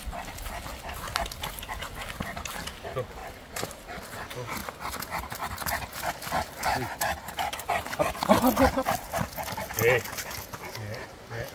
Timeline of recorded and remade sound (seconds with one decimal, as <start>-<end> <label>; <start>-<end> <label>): 0.0-3.2 recorded; 3.2-4.0 remade; 4.0-4.6 recorded; 4.6-9.7 remade; 9.7-11.5 recorded